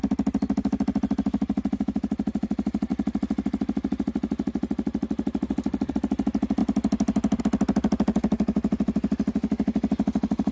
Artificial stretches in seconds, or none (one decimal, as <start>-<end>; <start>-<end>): none

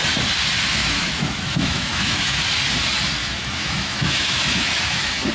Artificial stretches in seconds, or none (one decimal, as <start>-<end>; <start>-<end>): 0.8-2.4; 3.2-5.3

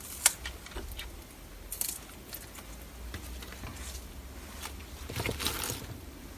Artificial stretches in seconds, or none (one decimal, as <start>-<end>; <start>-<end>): none

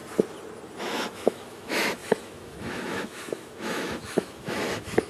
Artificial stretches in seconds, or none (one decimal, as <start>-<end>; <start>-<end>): 0.8-5.1

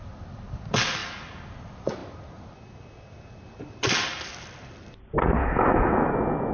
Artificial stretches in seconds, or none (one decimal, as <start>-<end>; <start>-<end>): 5.4-6.1

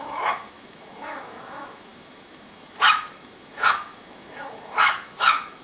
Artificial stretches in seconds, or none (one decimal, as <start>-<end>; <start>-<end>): 0.0-5.6

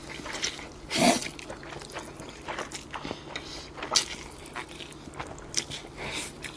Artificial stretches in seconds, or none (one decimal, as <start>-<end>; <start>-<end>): none